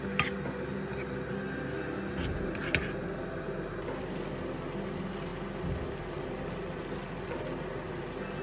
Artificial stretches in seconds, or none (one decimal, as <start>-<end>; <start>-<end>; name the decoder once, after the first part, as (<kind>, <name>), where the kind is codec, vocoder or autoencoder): none